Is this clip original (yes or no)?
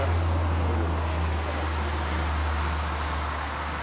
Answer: yes